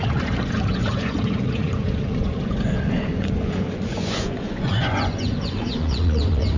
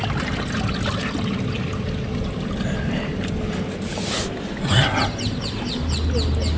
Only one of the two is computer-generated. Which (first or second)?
first